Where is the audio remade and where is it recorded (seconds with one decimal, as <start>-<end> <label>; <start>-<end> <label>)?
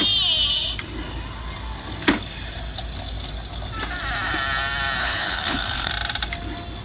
0.0-5.0 recorded; 5.0-5.9 remade; 5.9-6.8 recorded